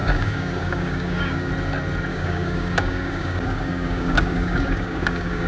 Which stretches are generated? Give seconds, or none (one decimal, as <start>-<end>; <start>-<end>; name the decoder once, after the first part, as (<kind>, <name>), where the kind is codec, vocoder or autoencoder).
0.0-1.5 (codec, DAC); 2.1-5.5